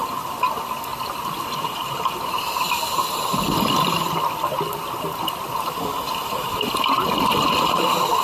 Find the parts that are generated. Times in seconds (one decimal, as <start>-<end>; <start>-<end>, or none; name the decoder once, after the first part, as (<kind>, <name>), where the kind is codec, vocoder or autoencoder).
none